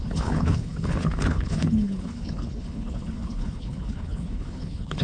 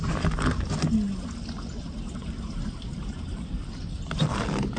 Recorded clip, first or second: second